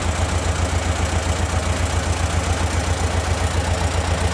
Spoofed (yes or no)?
no